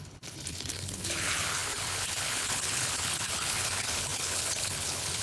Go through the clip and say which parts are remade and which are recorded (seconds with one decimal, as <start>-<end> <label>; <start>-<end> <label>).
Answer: 0.0-5.2 remade